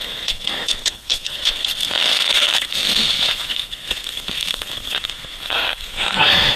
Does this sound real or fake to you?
fake